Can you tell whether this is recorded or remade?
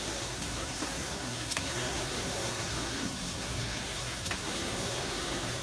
remade